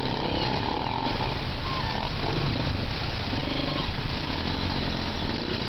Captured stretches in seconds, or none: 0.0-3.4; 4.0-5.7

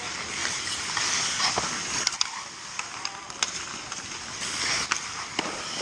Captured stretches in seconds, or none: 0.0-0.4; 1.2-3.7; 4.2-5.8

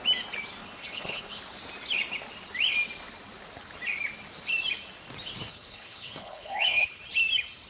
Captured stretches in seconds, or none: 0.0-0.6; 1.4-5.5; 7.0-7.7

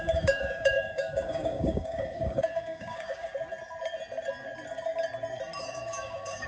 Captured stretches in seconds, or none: 3.3-5.6